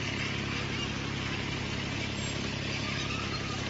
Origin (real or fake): real